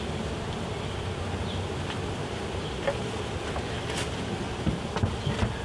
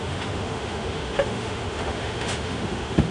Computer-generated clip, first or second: second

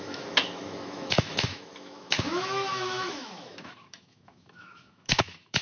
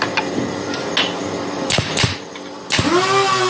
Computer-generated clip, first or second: first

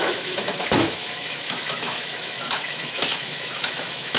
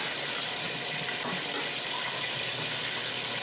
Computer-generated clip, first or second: first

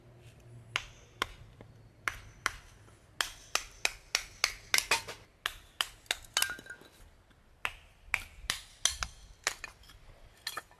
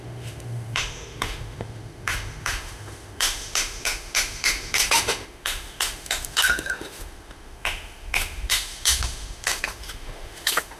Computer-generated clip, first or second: second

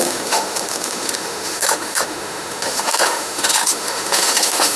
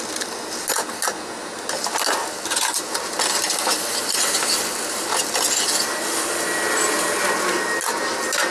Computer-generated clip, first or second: first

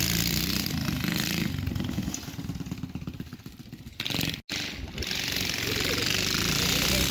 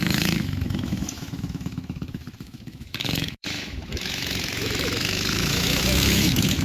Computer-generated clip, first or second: second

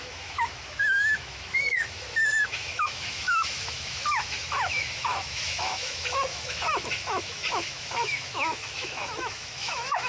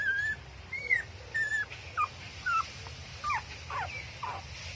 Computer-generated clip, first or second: first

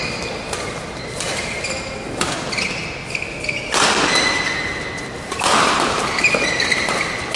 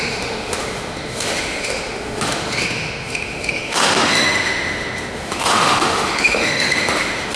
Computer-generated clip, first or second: second